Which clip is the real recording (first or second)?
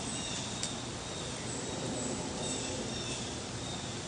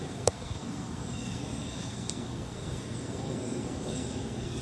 first